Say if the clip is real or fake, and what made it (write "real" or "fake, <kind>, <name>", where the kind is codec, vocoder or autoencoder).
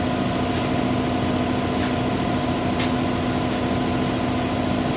real